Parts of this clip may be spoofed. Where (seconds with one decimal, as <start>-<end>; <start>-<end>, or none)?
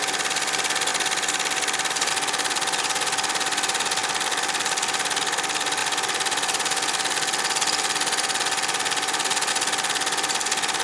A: 0.9-2.1; 4.0-5.2; 5.8-9.5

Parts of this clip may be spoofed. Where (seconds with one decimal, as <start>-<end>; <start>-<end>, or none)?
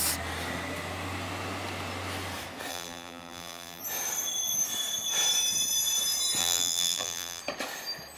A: 2.7-3.8; 6.4-7.4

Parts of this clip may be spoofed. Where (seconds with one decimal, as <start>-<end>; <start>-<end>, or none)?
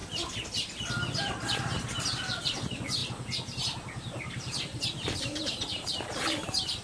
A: 0.5-3.0; 4.6-6.8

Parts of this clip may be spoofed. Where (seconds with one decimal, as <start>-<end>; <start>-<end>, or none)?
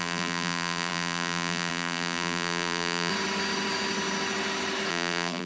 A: 0.0-3.1; 4.9-5.5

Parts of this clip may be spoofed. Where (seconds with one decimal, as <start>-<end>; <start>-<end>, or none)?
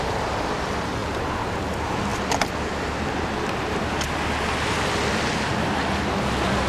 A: 1.0-1.6